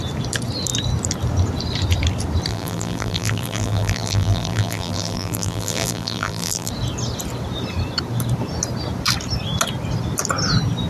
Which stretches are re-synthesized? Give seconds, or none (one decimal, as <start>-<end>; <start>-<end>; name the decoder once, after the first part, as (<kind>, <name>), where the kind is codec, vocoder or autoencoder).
2.5-6.7 (vocoder, BigVGAN v2)